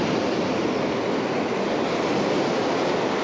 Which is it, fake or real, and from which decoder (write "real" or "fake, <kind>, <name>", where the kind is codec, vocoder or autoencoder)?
real